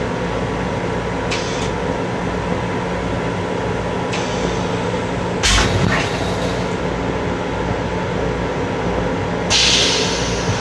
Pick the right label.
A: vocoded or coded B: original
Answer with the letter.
B